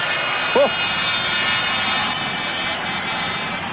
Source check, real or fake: real